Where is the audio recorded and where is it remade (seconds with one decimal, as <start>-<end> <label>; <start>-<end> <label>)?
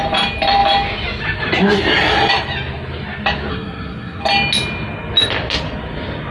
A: 0.0-3.5 recorded; 3.5-4.2 remade; 4.2-6.3 recorded